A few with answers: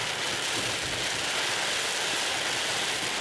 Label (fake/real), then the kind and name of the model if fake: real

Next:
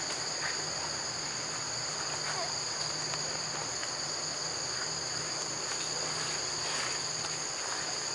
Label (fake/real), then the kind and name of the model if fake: real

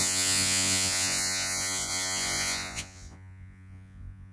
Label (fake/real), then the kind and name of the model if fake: fake, vocoder, Vocos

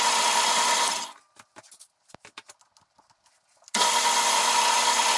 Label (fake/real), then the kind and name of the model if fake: real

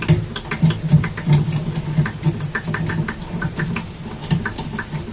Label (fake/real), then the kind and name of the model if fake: real